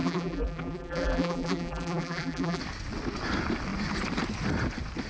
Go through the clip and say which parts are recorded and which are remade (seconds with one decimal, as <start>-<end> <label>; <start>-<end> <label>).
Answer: 0.0-2.6 remade; 2.6-5.1 recorded